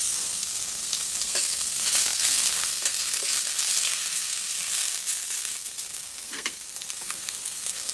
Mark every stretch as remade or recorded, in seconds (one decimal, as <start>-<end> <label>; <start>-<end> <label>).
0.0-7.9 remade